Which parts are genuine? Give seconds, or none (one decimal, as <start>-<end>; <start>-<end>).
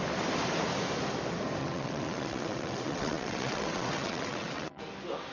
0.0-1.6; 4.8-5.3